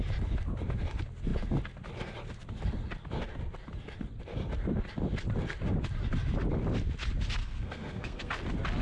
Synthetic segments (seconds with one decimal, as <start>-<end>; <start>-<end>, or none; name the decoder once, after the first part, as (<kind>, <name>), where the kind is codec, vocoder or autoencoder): 7.4-8.3 (codec, SNAC)